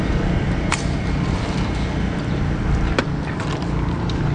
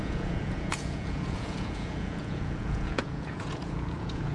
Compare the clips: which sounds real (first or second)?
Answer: first